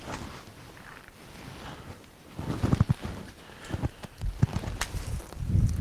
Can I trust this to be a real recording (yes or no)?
yes